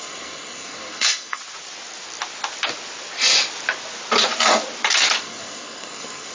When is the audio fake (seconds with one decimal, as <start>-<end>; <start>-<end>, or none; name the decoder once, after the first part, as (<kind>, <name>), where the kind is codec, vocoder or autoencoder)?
0.0-1.4 (codec, SNAC); 5.2-6.3